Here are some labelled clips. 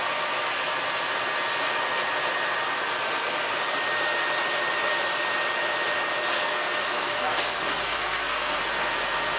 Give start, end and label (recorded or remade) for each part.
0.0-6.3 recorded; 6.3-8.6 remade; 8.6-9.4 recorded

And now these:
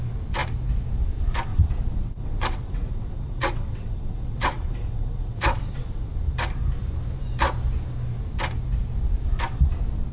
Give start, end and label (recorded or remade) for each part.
0.0-1.5 recorded; 1.5-6.1 remade; 6.1-10.1 recorded

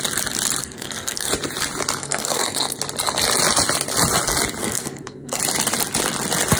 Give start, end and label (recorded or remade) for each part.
0.0-0.6 recorded; 0.6-1.3 remade; 1.3-2.0 recorded; 2.0-2.8 remade; 2.8-4.6 recorded; 4.6-5.4 remade; 5.4-6.6 recorded

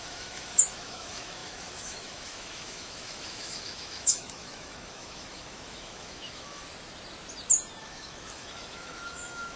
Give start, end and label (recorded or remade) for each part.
0.0-6.6 remade; 6.6-7.8 recorded; 7.8-9.6 remade

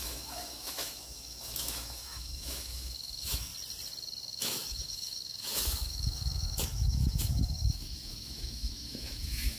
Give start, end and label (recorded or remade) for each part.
0.0-3.5 remade; 3.5-4.2 recorded; 4.2-9.6 remade

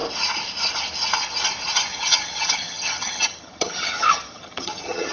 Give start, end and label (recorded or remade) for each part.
0.0-1.9 recorded; 1.9-5.1 remade